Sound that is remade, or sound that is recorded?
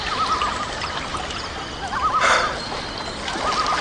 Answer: recorded